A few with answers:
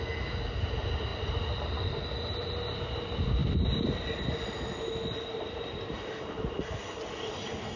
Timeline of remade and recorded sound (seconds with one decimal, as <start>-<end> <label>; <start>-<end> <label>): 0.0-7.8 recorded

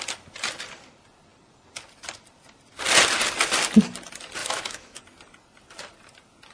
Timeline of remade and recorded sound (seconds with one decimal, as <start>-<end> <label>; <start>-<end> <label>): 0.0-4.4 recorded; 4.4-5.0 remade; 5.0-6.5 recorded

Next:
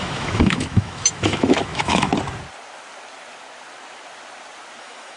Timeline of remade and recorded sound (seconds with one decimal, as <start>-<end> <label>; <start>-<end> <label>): 0.0-2.1 remade; 2.1-4.8 recorded; 4.8-5.2 remade

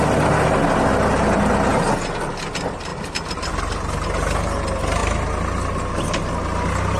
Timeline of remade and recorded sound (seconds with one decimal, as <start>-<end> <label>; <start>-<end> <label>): 0.0-7.0 recorded

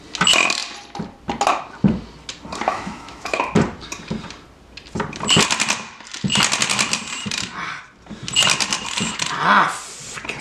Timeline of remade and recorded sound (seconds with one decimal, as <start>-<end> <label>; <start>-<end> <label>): 0.0-2.7 recorded; 2.7-3.4 remade; 3.4-10.4 recorded

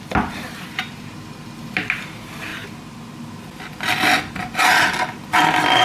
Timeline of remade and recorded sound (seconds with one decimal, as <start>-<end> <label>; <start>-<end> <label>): 0.0-5.8 recorded

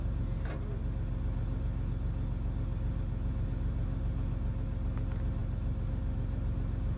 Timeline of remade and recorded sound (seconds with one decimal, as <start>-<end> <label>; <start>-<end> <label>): 0.0-7.0 recorded

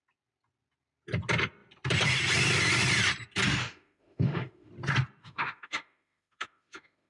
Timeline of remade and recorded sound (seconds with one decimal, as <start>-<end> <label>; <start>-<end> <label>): 0.0-3.6 recorded; 3.6-4.7 remade; 4.7-5.2 recorded; 5.2-7.1 remade